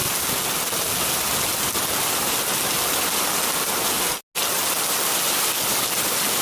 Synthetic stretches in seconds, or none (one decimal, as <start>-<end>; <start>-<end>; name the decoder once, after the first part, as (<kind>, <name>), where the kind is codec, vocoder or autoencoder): none